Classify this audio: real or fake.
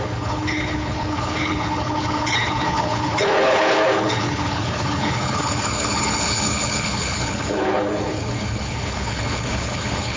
fake